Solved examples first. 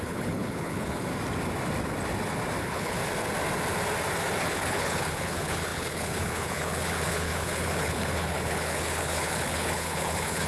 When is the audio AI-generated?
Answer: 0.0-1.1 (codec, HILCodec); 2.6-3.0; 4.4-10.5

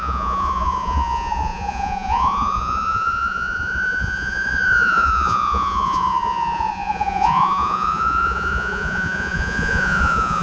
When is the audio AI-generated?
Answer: 0.0-10.4 (vocoder, Vocos)